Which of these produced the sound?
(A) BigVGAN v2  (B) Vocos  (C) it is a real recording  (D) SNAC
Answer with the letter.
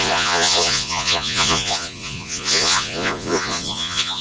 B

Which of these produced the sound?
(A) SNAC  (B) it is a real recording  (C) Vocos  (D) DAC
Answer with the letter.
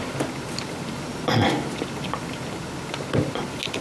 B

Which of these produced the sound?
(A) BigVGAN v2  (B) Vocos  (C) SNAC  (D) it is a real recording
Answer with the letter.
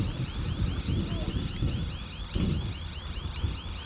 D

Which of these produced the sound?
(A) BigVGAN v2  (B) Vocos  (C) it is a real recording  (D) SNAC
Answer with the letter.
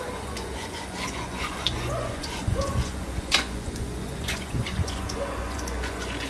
B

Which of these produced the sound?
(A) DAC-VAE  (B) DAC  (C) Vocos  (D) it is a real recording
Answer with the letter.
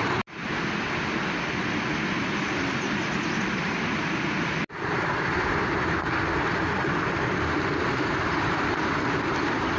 D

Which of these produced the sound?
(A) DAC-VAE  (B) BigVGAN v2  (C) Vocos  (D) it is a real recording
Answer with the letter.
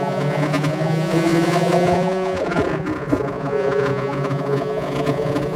C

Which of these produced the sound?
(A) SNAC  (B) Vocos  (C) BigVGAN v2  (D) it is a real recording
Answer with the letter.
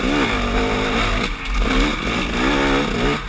D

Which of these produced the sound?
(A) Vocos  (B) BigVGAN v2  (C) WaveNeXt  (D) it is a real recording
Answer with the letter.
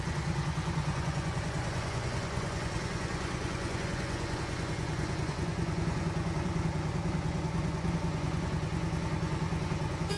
A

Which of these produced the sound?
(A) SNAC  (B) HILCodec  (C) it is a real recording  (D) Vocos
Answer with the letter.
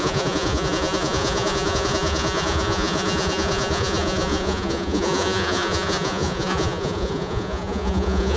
D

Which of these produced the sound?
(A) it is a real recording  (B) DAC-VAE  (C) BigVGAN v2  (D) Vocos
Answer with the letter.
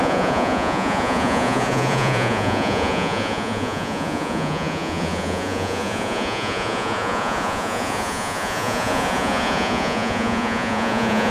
D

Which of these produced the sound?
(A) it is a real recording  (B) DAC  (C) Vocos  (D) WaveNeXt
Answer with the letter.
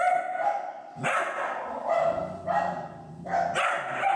A